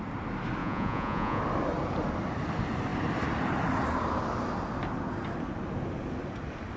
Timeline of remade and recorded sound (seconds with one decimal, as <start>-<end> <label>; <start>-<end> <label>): 0.0-0.6 recorded; 0.6-1.4 remade; 1.4-6.8 recorded